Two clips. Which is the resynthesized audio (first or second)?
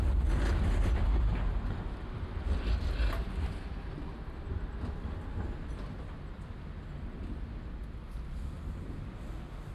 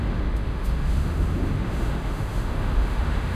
second